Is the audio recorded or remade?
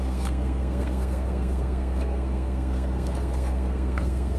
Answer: remade